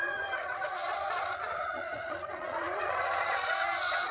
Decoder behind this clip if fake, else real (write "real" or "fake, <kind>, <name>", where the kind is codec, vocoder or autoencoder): fake, vocoder, Vocos